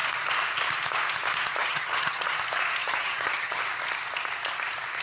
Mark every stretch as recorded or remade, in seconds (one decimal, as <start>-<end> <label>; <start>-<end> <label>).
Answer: 0.0-1.6 recorded; 1.6-2.3 remade; 2.3-2.8 recorded; 2.8-3.6 remade; 3.6-5.0 recorded